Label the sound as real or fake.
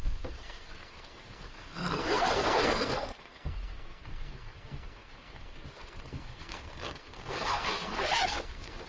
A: fake